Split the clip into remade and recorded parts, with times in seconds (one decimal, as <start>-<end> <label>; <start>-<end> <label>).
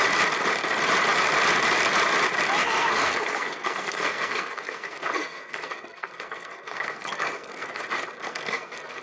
0.0-2.6 recorded; 2.6-7.8 remade; 7.8-8.3 recorded; 8.3-9.0 remade